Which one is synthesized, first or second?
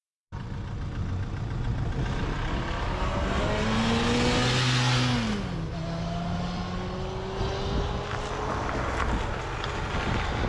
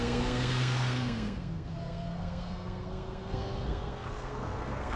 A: second